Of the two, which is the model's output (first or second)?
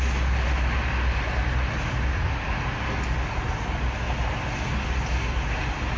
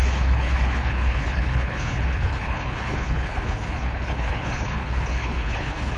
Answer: second